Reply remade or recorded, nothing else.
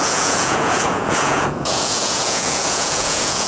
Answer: remade